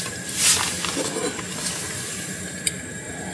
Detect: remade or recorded recorded